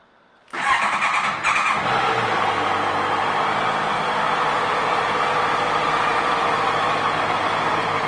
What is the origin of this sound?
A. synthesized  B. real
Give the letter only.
B